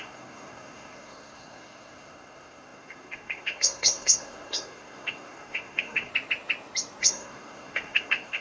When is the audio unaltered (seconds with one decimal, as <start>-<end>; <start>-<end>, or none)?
6.1-7.0